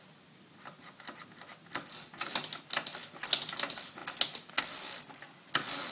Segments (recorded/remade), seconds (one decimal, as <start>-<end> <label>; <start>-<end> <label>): 0.0-5.9 recorded

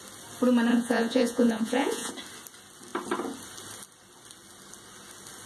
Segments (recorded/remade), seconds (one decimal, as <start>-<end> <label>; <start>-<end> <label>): 0.0-0.7 recorded; 0.7-2.1 remade; 2.1-5.5 recorded

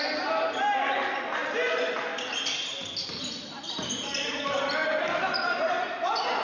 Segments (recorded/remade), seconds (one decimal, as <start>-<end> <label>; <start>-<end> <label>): 0.0-4.8 recorded; 4.8-5.7 remade; 5.7-6.4 recorded

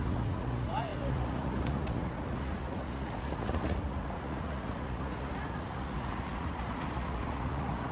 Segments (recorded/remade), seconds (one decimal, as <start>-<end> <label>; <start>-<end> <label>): 0.0-7.9 remade